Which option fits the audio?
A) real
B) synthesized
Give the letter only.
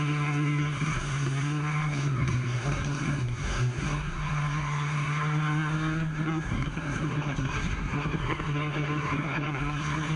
B